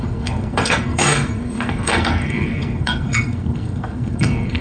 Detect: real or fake fake